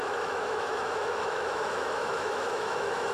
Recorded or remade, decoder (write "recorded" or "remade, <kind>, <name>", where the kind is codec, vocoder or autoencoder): remade, autoencoder, DAC-VAE